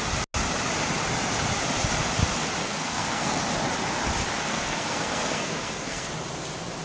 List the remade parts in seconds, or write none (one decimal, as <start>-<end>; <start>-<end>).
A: 2.6-3.4; 4.5-6.1